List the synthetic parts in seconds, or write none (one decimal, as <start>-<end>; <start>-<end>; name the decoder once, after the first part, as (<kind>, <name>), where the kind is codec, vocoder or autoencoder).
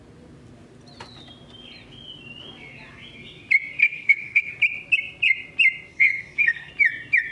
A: 3.8-4.5 (codec, SNAC); 5.9-6.7